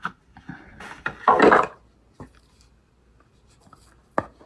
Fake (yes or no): no